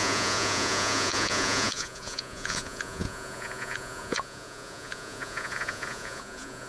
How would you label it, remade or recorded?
remade